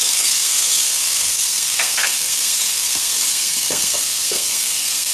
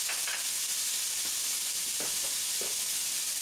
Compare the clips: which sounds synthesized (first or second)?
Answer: first